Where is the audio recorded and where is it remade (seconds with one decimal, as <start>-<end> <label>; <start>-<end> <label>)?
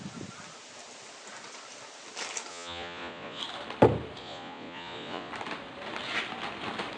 0.0-2.5 recorded; 2.5-3.4 remade; 3.4-4.2 recorded; 4.2-5.3 remade; 5.3-7.0 recorded